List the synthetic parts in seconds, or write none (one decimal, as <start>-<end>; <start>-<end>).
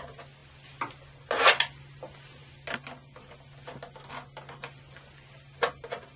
none